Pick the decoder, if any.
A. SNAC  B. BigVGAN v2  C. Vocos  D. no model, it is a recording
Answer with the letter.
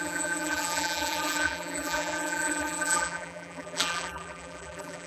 B